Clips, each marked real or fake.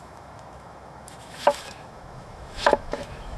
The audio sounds fake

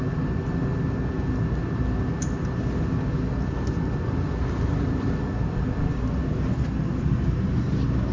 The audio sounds real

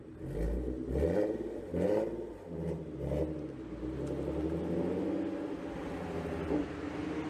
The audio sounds real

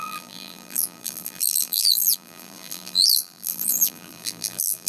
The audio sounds fake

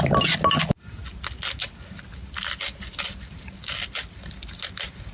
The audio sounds real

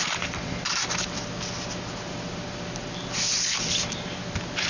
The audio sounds real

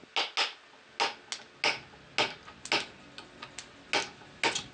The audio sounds real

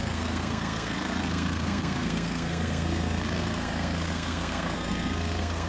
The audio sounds fake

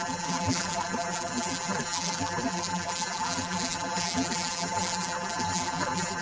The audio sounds fake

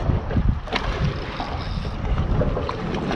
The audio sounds real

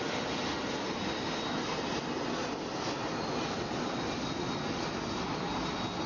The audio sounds real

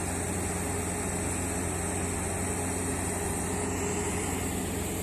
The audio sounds real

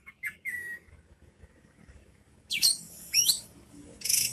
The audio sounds fake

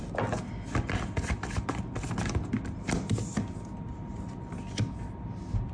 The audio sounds real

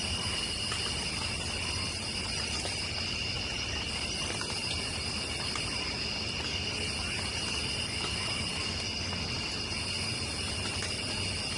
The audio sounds real